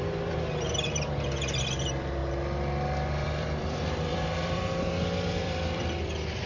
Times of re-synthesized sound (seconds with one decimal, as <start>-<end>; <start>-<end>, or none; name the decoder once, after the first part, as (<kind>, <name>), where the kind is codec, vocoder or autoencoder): 0.0-6.5 (vocoder, BigVGAN v2)